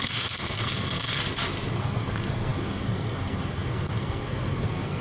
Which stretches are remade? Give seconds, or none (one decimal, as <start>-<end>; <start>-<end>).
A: 0.0-1.2; 1.7-5.0